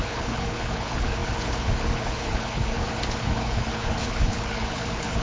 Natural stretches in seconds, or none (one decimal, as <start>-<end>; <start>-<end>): none